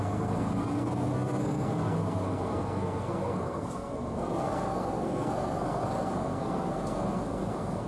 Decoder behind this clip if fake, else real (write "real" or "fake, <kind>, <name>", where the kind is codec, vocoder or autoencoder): fake, codec, SNAC